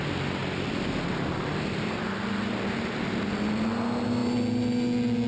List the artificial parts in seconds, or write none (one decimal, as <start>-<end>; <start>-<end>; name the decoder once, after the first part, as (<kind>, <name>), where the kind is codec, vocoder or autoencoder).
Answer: none